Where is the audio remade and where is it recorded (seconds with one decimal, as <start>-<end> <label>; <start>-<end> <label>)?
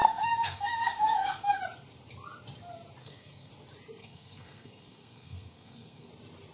0.0-1.6 remade; 1.6-3.0 recorded; 3.0-3.5 remade; 3.5-4.0 recorded; 4.0-6.1 remade; 6.1-6.5 recorded